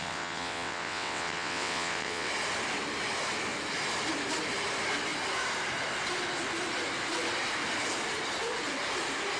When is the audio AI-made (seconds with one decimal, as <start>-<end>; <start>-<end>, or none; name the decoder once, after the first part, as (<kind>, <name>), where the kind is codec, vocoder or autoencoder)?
0.0-2.3 (vocoder, WaveNeXt)